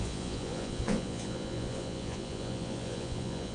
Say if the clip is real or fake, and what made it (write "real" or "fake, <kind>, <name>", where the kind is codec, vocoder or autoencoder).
fake, vocoder, Vocos